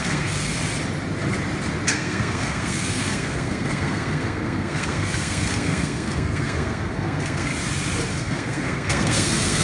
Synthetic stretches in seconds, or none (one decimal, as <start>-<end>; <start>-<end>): 0.0-0.5; 1.9-7.5; 8.1-9.6